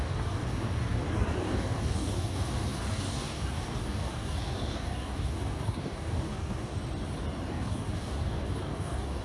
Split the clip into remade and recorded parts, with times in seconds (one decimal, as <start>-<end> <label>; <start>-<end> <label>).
0.0-6.7 remade; 6.7-7.5 recorded; 7.5-9.2 remade